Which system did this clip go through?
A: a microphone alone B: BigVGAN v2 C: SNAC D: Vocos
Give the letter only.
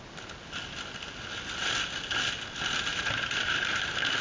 A